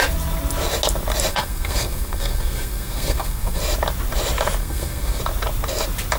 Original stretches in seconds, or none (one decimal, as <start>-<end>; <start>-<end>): 0.0-1.3; 3.6-4.6; 5.2-6.2